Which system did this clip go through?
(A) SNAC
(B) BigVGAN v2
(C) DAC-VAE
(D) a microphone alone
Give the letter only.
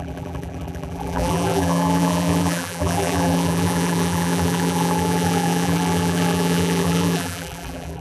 B